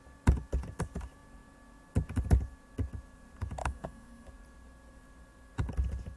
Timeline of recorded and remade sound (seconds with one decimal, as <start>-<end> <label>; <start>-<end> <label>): 0.0-3.6 recorded; 3.6-4.3 remade; 4.3-6.2 recorded